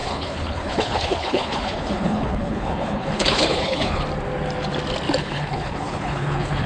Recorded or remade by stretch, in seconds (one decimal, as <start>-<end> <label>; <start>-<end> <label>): 0.0-4.0 remade; 4.0-5.2 recorded; 5.2-6.7 remade